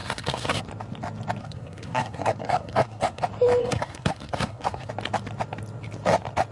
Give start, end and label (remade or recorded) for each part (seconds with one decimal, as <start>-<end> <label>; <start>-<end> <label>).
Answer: 0.0-0.6 remade; 0.6-1.4 recorded; 1.4-3.2 remade; 3.2-3.6 recorded; 3.6-4.9 remade; 4.9-6.5 recorded